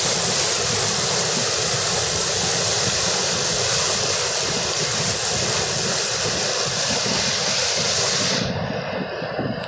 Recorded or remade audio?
recorded